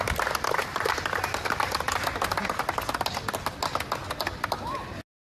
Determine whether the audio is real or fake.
real